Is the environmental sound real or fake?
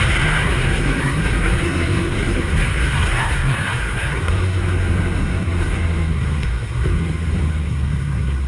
fake